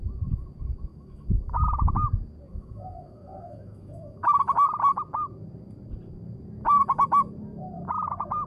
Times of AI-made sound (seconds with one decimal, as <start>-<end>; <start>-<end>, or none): 0.9-1.9; 2.5-4.4